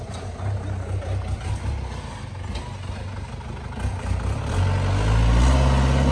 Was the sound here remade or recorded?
recorded